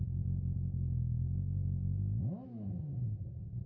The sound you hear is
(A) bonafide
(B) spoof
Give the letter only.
B